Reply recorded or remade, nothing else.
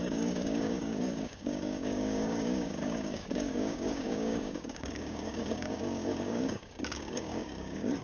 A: remade